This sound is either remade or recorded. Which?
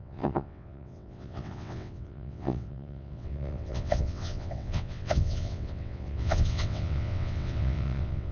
remade